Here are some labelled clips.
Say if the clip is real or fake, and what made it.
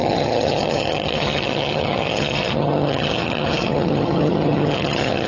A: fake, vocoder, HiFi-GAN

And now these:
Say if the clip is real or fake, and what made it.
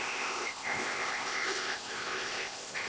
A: fake, codec, ZipCodec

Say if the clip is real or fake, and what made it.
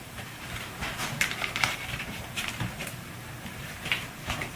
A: fake, vocoder, BigVGAN v2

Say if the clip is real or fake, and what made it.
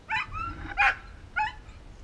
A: real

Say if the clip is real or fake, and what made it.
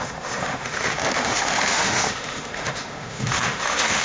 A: fake, autoencoder, DAC-VAE